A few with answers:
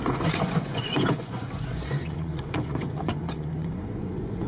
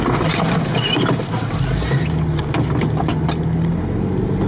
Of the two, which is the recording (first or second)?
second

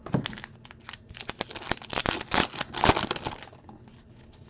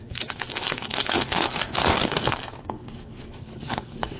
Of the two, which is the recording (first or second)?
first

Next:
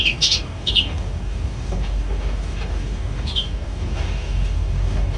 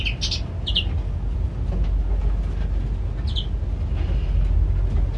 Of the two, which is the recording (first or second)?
second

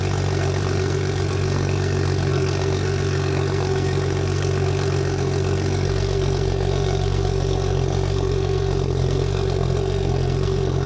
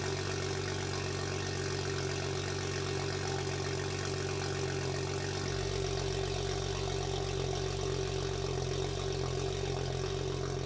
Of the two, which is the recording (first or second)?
second